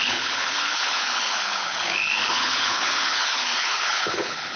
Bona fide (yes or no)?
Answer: no